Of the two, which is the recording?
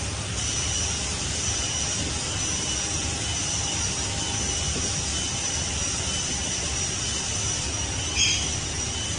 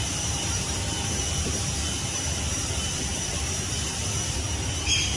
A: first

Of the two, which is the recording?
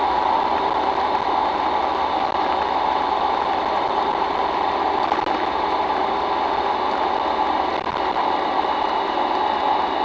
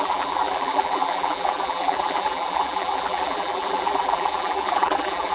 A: first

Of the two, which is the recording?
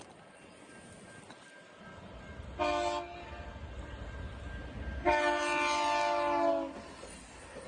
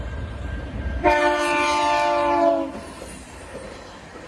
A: first